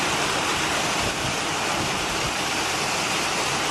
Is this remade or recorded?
recorded